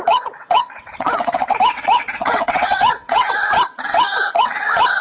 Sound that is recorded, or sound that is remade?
remade